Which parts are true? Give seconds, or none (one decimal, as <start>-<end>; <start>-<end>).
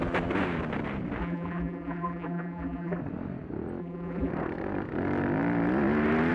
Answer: 0.0-1.2; 3.0-3.8; 4.3-6.3